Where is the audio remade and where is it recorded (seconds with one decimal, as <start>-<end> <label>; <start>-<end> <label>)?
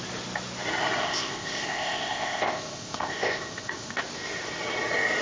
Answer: 0.0-1.0 recorded; 1.0-4.0 remade; 4.0-5.2 recorded